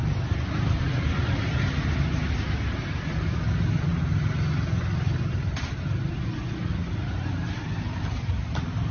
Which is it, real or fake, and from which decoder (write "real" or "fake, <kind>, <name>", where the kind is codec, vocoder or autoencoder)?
real